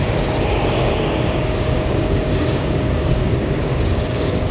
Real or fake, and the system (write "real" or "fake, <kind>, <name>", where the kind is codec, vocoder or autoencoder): fake, codec, DAC